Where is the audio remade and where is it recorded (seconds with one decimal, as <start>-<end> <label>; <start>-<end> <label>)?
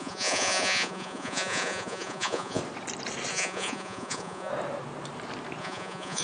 0.0-2.6 remade; 2.6-3.3 recorded; 3.3-4.5 remade; 4.5-5.6 recorded; 5.6-6.2 remade